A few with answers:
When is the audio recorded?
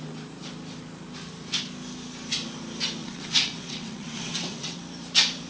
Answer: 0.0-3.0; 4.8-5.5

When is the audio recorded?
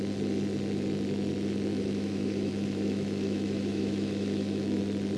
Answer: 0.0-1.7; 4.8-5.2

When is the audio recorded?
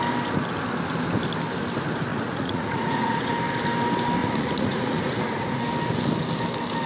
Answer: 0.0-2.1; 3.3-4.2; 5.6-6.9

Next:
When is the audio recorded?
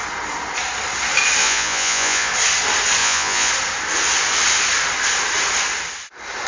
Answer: 0.0-1.4; 2.3-3.0; 3.5-6.5